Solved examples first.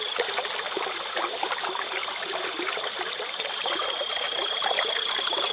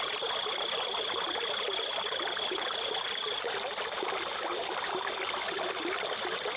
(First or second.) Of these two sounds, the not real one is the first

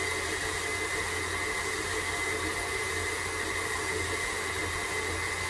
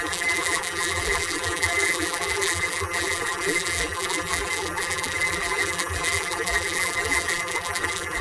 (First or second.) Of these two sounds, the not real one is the second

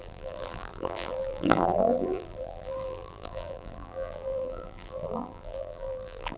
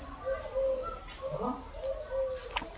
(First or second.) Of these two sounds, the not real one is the first